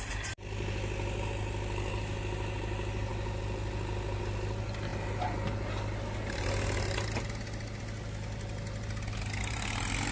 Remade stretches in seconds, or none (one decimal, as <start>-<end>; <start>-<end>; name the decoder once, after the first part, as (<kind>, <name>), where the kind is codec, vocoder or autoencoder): none